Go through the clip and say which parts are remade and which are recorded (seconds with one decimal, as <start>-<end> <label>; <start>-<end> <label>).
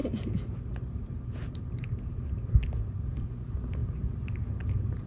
0.0-3.1 remade; 3.1-5.1 recorded